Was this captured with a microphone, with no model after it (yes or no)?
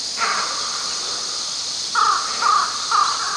yes